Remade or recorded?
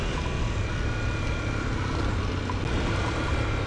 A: recorded